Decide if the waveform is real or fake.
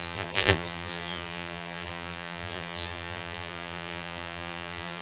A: fake